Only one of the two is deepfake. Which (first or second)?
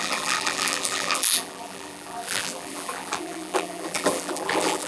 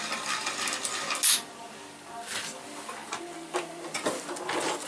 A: first